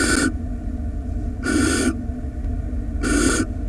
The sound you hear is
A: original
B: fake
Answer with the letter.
A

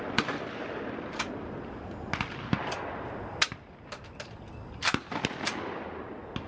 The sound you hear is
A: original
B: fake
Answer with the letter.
A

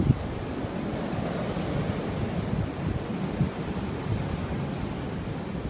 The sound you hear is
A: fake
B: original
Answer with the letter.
B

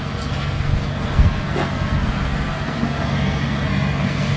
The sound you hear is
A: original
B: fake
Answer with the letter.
B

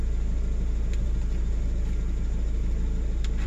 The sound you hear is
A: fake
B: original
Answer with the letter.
B